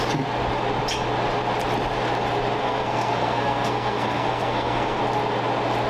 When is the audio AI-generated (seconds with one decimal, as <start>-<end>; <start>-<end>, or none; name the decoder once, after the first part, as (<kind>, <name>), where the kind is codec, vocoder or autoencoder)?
2.6-5.0 (codec, SNAC)